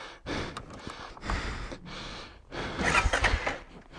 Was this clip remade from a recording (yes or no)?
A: no